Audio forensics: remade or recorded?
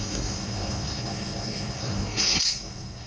remade